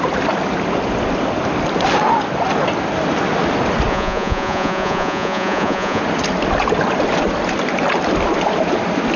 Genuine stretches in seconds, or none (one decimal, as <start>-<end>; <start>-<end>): 0.0-3.9; 6.0-9.2